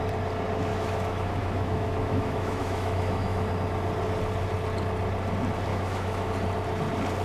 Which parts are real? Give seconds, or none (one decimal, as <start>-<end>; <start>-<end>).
0.0-0.7; 3.5-5.7; 6.3-7.2

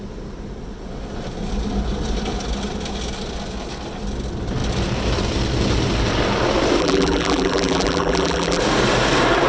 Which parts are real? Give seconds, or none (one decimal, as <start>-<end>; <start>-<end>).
0.0-6.8; 8.6-9.5